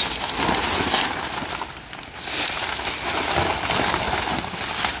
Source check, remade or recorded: recorded